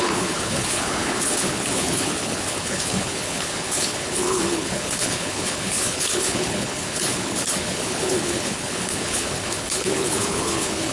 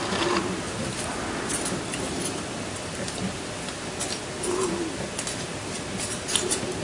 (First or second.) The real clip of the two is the second